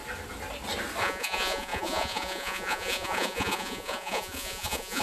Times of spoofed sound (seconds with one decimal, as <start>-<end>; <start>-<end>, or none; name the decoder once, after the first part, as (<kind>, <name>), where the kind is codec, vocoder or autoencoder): 1.0-5.0 (vocoder, Vocos)